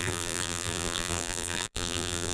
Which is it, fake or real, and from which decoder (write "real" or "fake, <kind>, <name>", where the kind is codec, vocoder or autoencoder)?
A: fake, vocoder, BigVGAN v2